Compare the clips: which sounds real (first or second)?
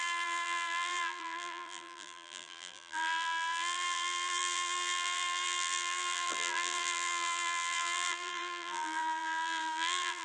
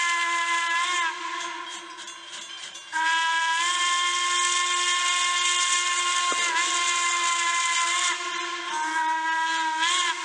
second